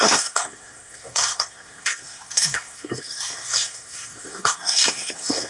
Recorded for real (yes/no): no